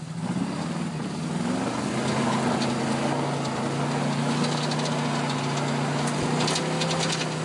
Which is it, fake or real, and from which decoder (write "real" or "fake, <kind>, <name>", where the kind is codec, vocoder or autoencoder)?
real